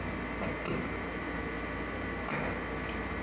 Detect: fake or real real